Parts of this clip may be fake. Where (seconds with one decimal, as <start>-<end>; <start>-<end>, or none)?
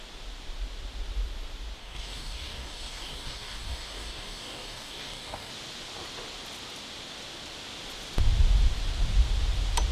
1.8-5.5